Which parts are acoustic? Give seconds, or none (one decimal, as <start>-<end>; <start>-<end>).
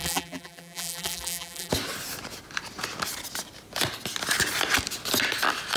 1.7-5.8